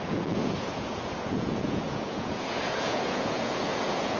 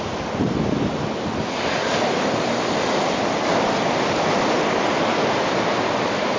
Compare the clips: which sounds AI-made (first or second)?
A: first